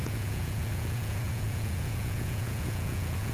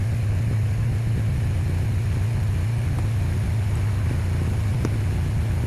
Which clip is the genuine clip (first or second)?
second